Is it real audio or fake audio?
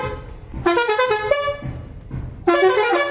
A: real